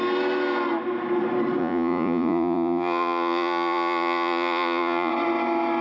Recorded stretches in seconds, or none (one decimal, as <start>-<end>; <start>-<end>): 0.0-1.6; 5.1-5.8